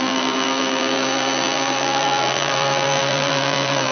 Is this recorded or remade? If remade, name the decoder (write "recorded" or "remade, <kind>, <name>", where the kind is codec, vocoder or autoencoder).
remade, vocoder, BigVGAN v2